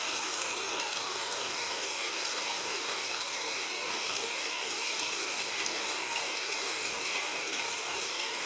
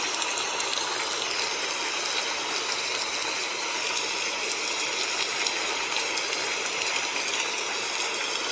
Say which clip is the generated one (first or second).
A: first